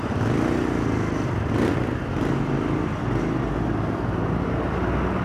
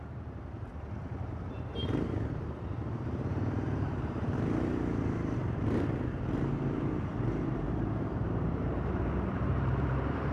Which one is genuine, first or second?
first